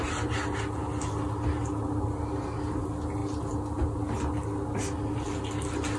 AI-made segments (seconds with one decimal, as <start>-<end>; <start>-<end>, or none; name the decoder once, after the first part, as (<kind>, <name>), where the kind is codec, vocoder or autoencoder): none